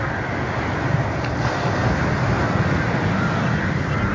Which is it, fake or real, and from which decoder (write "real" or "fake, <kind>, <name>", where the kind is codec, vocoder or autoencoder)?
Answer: real